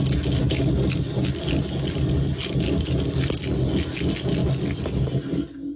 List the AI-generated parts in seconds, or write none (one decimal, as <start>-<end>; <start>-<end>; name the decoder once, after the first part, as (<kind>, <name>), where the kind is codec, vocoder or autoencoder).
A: none